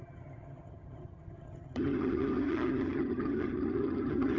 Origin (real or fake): fake